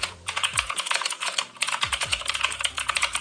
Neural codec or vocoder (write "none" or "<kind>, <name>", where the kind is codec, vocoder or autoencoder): vocoder, Vocos